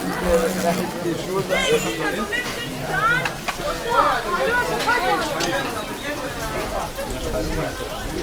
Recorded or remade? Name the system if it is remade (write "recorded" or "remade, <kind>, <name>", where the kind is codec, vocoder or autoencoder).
recorded